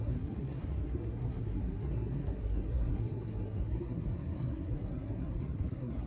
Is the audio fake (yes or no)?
yes